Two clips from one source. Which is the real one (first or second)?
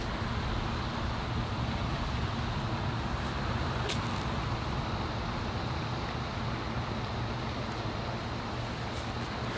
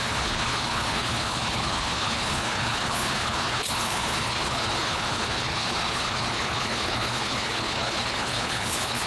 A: first